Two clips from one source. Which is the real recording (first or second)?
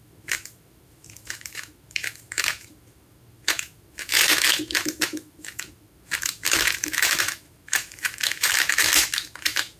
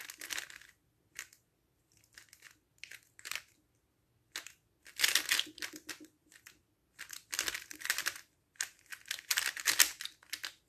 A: second